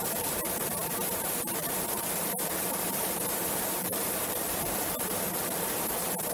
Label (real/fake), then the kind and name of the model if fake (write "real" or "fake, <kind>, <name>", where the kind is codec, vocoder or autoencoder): fake, vocoder, BigVGAN v2